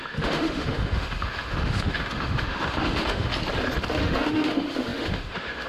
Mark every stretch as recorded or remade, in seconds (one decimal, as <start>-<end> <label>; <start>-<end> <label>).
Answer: 0.0-3.3 remade; 3.3-3.9 recorded; 3.9-5.7 remade

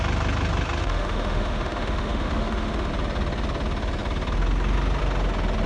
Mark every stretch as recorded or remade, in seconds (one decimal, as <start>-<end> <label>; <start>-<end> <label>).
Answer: 0.0-0.8 recorded; 0.8-2.9 remade; 2.9-5.7 recorded